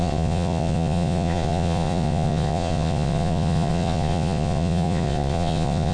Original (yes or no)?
no